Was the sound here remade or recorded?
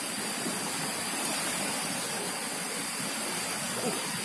recorded